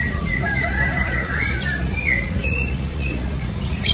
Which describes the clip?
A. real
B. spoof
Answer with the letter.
B